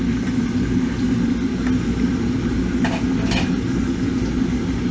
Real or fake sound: real